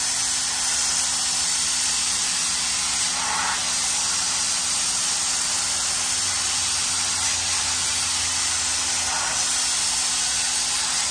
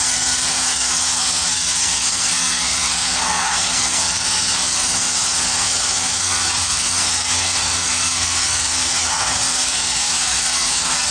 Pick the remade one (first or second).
second